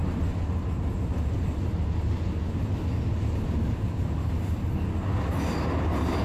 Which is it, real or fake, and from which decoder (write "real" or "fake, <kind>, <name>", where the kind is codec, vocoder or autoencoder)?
real